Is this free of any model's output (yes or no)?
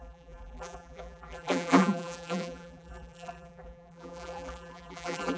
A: no